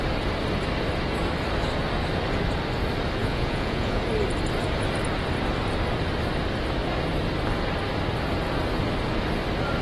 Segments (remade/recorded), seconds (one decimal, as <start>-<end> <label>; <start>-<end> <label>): 0.0-3.2 recorded; 3.2-4.0 remade; 4.0-9.8 recorded